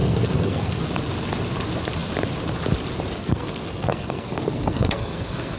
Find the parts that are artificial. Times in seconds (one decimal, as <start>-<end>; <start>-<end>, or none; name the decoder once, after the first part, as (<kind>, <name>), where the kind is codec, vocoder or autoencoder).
0.0-0.8 (codec, SNAC); 3.2-5.6